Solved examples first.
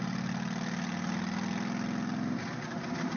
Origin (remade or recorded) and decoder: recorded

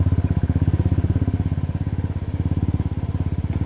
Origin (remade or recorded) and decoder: recorded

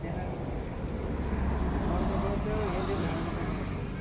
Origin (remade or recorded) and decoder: recorded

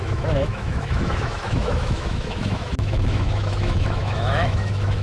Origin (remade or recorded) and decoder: remade, autoencoder, DAC-VAE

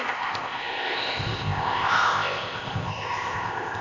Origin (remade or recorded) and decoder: remade, codec, ZipCodec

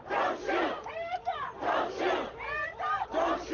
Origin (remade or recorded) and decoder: recorded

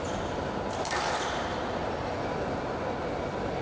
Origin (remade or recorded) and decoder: recorded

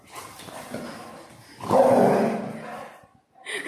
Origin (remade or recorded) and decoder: recorded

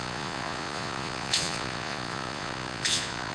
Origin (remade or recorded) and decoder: remade, vocoder, Vocos